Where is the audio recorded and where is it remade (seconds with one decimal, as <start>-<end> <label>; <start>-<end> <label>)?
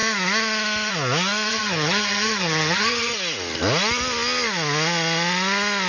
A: 0.0-1.5 recorded; 1.5-3.1 remade; 3.1-5.9 recorded